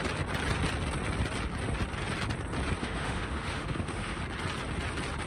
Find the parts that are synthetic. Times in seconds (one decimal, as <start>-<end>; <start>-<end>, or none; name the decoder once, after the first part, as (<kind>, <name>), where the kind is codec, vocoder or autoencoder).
2.8-4.2 (autoencoder, DAC-VAE)